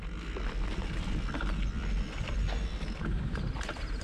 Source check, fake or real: real